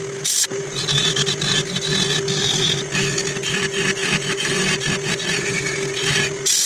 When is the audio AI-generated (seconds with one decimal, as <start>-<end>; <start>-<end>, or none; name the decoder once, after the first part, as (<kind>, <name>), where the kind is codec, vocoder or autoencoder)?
4.0-4.6 (autoencoder, DAC-VAE)